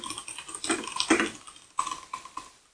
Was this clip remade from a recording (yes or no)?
no